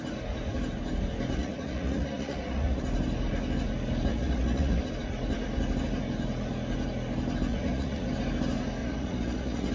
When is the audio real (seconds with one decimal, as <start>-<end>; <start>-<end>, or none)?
0.0-1.4; 2.8-4.1; 4.8-7.5; 8.1-8.8